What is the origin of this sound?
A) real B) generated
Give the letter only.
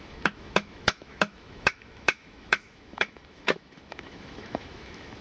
B